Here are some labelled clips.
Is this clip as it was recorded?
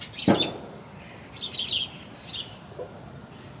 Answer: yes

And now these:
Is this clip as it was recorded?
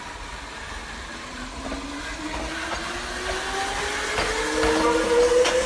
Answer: yes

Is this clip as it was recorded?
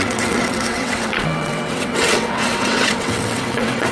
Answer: no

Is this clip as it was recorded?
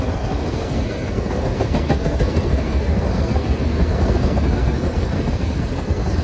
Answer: no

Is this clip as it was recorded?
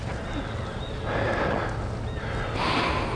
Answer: yes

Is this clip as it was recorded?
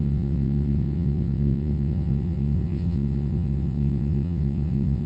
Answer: no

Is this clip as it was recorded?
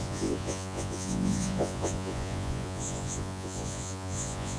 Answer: no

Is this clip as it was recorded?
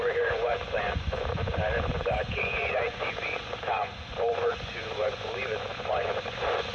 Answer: no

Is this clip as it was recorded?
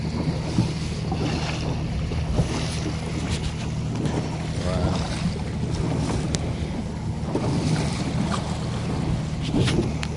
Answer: yes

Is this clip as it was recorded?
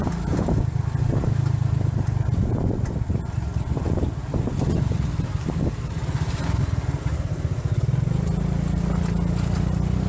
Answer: yes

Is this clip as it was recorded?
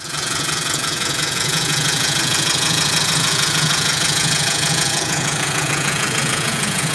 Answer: no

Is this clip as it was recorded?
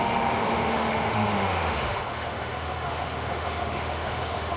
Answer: no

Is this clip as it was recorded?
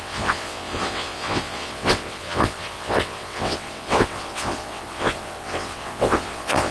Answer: no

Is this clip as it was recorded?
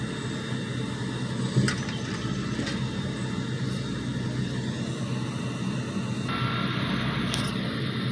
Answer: yes